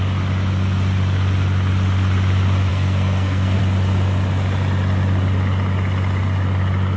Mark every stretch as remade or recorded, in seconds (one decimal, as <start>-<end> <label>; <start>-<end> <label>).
0.0-2.7 recorded; 2.7-3.6 remade; 3.6-7.0 recorded